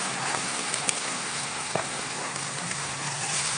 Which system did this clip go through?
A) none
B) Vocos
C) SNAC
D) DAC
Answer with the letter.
C